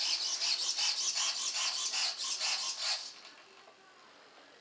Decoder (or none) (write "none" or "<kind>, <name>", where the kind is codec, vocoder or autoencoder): none